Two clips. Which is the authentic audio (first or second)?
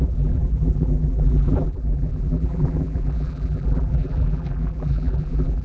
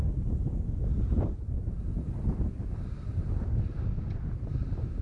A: second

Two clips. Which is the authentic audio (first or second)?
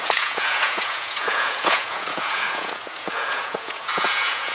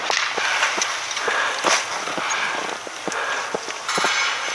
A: second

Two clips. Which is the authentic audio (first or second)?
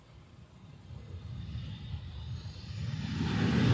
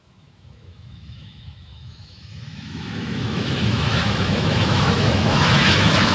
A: first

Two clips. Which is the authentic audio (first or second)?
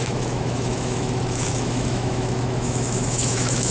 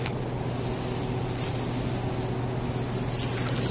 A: second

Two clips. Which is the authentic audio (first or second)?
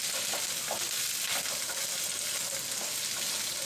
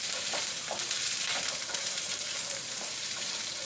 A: first